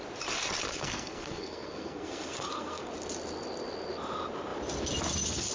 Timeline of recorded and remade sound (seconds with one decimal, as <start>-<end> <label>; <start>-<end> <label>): 0.0-0.7 recorded; 0.7-2.9 remade; 2.9-5.5 recorded